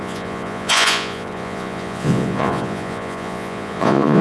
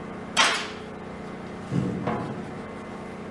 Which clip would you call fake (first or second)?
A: first